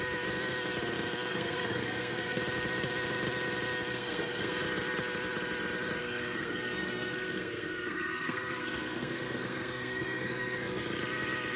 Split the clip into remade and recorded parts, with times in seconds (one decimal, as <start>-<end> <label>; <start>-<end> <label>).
0.0-1.3 recorded; 1.3-2.4 remade; 2.4-3.9 recorded; 3.9-4.5 remade; 4.5-6.0 recorded; 6.0-10.8 remade; 10.8-11.6 recorded

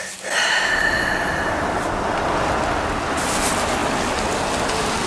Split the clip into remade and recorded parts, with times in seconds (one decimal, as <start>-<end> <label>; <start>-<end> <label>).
0.0-5.1 recorded